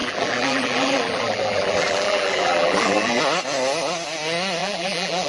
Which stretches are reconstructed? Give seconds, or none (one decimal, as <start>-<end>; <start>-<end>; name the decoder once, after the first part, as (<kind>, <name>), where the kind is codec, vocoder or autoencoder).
0.0-3.2 (vocoder, BigVGAN v2); 4.6-5.3